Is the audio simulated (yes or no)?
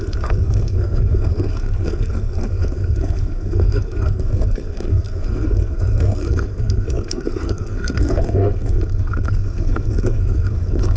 yes